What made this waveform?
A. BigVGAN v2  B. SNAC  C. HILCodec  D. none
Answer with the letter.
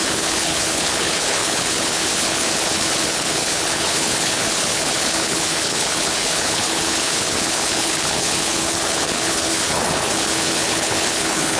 C